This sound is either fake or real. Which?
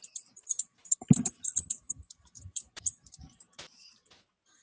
fake